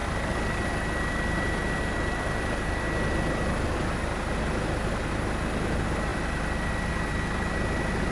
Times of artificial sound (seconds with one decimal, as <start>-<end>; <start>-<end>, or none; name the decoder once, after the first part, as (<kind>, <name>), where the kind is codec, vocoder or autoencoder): 0.0-2.8 (vocoder, BigVGAN v2); 6.1-6.9